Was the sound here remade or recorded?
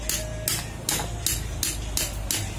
recorded